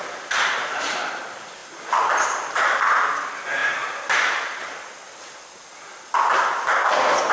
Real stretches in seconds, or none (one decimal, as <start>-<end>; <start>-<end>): 0.0-3.6; 4.2-7.3